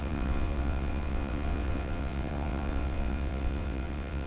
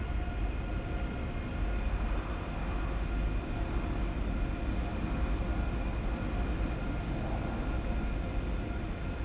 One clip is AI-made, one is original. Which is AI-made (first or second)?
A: first